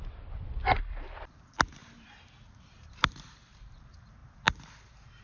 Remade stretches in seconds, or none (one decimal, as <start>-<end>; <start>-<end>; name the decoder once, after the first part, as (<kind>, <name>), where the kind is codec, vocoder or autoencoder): 1.8-3.7 (vocoder, BigVGAN v2); 4.2-5.2